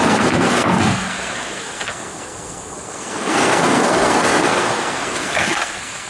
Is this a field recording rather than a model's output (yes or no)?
no